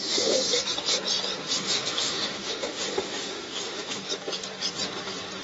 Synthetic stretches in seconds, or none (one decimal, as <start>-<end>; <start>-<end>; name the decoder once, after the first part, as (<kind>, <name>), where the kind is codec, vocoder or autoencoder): 0.0-0.4 (autoencoder, DAC-VAE); 1.4-4.1